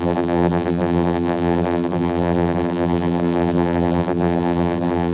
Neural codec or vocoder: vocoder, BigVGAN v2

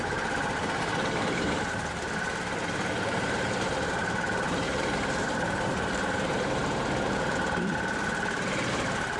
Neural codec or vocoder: vocoder, BigVGAN v2